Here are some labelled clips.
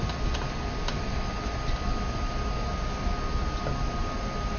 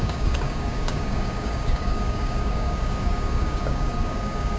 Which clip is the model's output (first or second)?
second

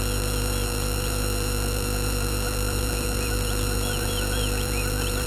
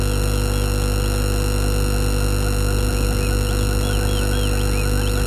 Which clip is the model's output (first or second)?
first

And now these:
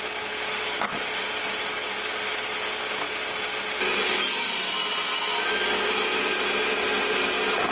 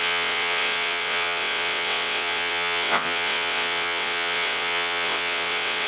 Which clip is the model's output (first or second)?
second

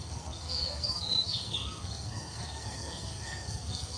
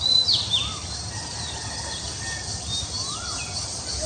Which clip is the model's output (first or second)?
first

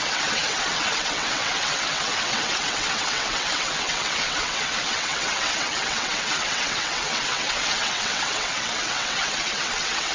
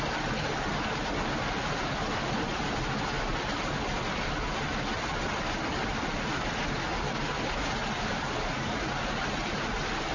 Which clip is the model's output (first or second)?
first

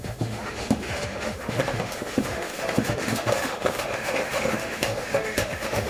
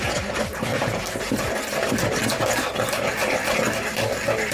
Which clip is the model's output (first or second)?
first